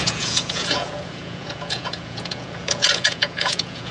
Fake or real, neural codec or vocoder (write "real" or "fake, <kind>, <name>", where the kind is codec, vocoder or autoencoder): fake, vocoder, Vocos